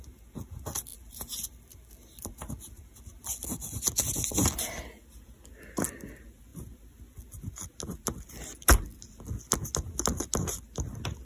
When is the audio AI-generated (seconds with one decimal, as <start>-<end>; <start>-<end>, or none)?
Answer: none